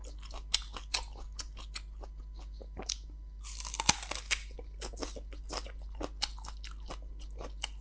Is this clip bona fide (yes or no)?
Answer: yes